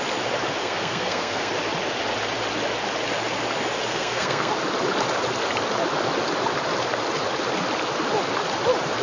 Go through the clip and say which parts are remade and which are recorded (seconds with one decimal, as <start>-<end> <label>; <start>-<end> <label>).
0.0-0.6 recorded; 0.6-1.5 remade; 1.5-3.9 recorded; 3.9-4.5 remade; 4.5-9.0 recorded